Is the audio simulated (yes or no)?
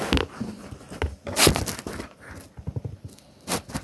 no